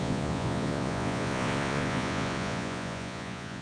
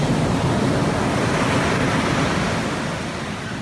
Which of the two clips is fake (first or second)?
first